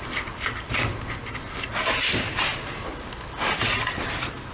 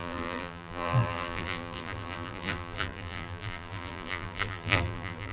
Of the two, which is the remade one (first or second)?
second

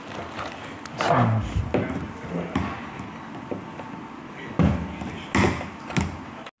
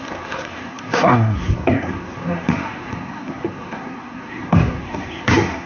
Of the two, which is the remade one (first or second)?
second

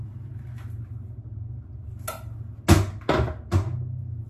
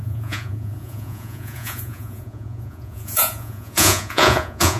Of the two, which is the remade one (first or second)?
second